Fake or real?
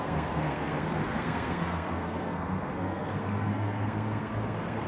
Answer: fake